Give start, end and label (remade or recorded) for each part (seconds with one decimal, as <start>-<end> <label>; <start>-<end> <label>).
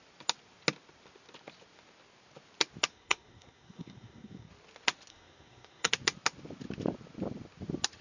0.0-2.9 recorded; 2.9-4.5 remade; 4.5-5.1 recorded; 5.1-5.9 remade; 5.9-8.0 recorded